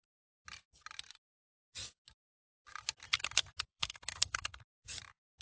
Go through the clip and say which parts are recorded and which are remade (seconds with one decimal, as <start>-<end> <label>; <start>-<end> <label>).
0.0-3.7 recorded; 3.7-4.6 remade; 4.6-5.4 recorded